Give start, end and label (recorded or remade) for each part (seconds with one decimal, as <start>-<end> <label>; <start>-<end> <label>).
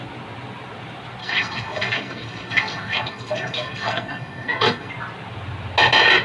0.0-1.2 recorded; 1.2-4.9 remade; 4.9-6.2 recorded